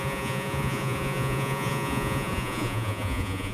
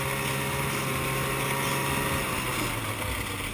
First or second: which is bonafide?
second